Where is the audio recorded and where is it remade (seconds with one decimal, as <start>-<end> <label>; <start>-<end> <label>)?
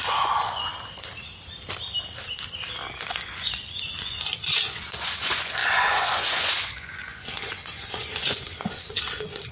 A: 0.0-0.7 remade; 0.7-3.0 recorded; 3.0-9.5 remade